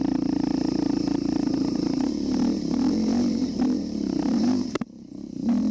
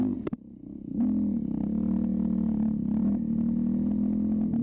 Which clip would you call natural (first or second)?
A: second